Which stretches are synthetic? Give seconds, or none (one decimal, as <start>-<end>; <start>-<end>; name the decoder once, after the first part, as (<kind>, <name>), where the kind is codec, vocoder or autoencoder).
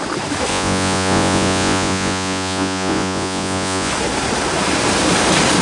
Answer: 0.5-3.9 (vocoder, Vocos)